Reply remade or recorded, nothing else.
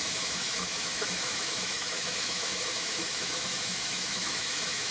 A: remade